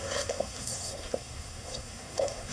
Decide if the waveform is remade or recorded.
remade